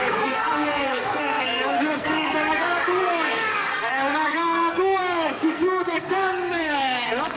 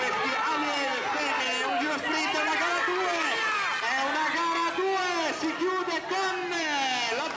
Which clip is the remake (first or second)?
first